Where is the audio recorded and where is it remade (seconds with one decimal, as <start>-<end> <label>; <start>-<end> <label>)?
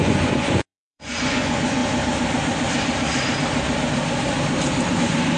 0.0-1.8 remade; 1.8-5.0 recorded; 5.0-5.4 remade